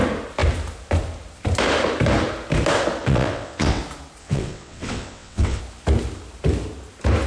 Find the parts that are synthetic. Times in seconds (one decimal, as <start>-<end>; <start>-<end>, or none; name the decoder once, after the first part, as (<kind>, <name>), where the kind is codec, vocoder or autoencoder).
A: 3.0-3.8 (vocoder, WaveNeXt); 4.2-5.6